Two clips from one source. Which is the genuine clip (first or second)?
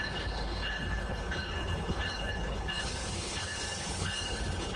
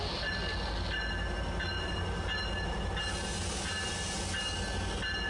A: second